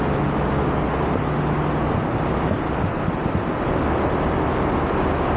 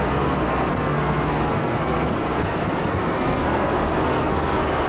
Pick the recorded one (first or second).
first